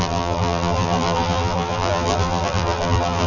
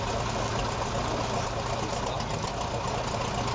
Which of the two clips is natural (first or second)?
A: second